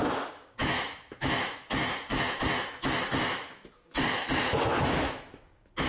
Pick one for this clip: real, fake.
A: fake